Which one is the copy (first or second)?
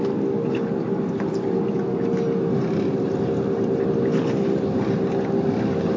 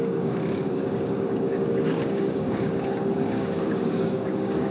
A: second